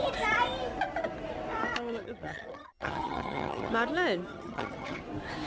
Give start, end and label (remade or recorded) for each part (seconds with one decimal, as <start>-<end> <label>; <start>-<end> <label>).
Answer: 0.0-2.0 recorded; 2.0-3.7 remade; 3.7-4.3 recorded; 4.3-5.0 remade; 5.0-5.5 recorded

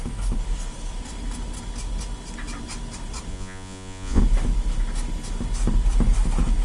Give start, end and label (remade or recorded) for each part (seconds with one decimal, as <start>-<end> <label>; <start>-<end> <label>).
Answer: 0.0-3.3 recorded; 3.3-4.2 remade; 4.2-6.6 recorded

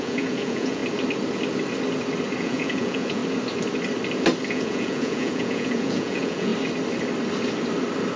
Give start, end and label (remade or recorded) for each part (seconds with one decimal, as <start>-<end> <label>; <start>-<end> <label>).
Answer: 0.0-0.8 remade; 0.8-2.4 recorded; 2.4-3.2 remade; 3.2-4.5 recorded; 4.5-6.5 remade; 6.5-8.2 recorded

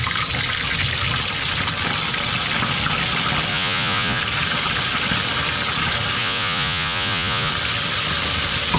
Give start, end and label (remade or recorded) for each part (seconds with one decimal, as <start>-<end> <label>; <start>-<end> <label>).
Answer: 0.0-3.5 recorded; 3.5-4.2 remade; 4.2-6.2 recorded; 6.2-7.5 remade; 7.5-8.8 recorded